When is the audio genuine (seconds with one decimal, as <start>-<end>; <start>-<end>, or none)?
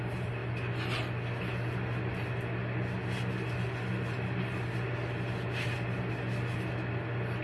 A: 0.0-7.4